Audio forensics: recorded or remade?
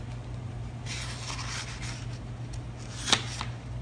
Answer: recorded